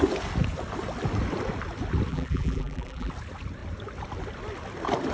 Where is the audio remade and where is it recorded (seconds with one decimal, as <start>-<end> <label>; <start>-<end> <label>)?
0.0-2.1 recorded; 2.1-3.1 remade; 3.1-5.1 recorded